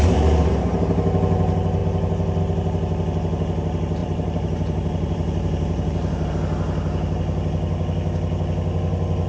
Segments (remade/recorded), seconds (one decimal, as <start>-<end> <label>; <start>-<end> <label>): 0.0-4.0 recorded; 4.0-6.3 remade; 6.3-9.3 recorded